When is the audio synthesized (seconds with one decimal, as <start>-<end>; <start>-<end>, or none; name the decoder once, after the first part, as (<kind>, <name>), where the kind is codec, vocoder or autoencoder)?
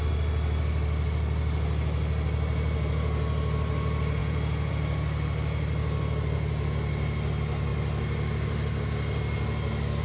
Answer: 4.2-4.7 (vocoder, Vocos)